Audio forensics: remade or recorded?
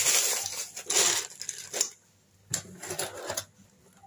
recorded